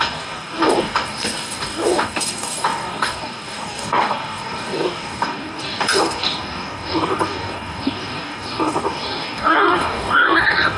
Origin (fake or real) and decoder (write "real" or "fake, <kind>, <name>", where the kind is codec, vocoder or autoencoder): fake, codec, DAC